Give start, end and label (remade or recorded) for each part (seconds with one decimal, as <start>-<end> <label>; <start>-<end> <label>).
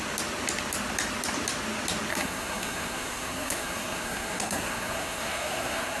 0.0-2.1 recorded; 2.1-6.0 remade